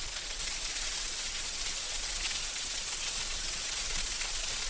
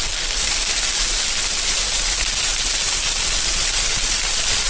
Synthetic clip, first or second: first